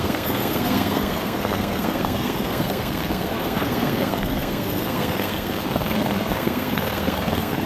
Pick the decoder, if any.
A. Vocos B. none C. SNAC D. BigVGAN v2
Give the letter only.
C